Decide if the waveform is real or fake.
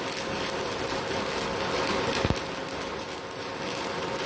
real